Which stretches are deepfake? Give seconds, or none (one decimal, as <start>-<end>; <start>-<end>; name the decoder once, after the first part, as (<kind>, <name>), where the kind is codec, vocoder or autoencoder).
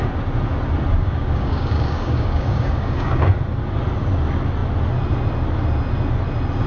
0.9-3.3 (codec, DAC)